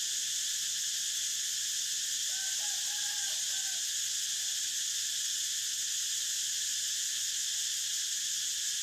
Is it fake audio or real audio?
real